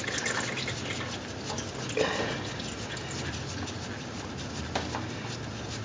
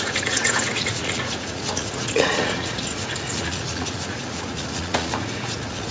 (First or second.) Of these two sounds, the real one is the first